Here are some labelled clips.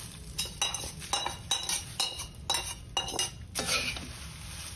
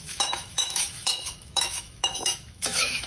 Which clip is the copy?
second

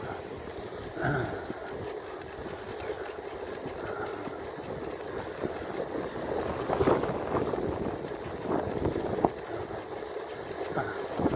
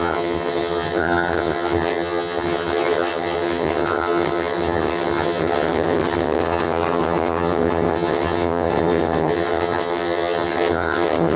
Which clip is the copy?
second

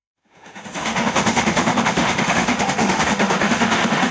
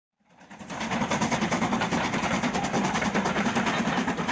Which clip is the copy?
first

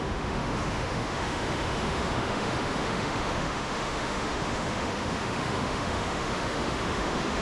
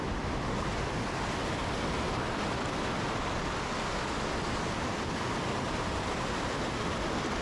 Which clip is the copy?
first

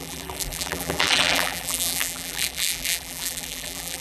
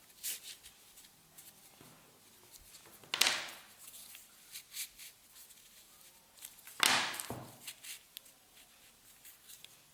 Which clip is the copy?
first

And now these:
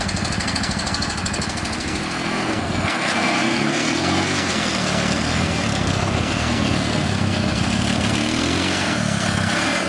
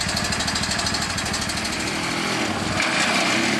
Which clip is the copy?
first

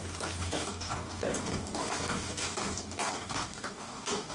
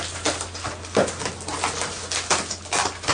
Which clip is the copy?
first